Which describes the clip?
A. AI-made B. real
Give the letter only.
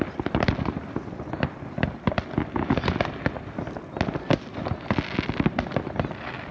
B